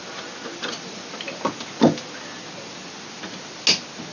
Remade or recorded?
recorded